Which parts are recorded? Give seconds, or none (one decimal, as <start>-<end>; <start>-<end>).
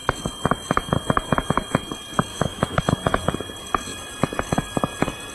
0.0-2.3; 2.8-5.3